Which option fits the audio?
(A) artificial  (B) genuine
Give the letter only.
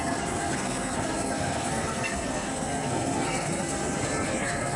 A